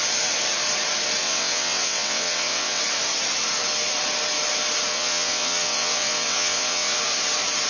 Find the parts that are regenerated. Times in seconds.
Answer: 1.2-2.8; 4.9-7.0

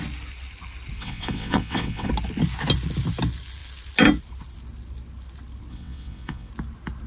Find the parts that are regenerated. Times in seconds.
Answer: 1.0-2.1; 5.7-6.5

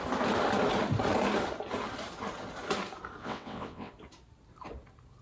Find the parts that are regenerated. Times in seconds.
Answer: 3.2-3.9

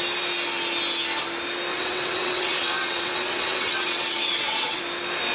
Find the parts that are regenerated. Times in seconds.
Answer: 1.7-4.8

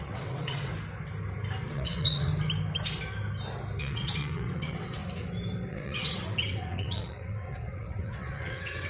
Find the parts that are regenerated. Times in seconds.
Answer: 0.0-0.7; 1.7-2.3; 3.8-5.0; 5.7-8.9

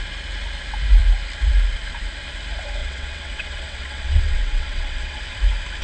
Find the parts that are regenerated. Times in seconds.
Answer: 2.8-5.2